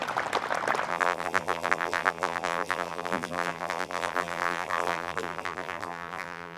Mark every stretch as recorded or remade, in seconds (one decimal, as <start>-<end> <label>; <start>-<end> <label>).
0.0-0.9 recorded; 0.9-6.6 remade